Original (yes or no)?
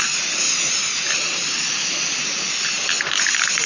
yes